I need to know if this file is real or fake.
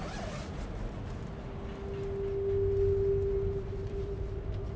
real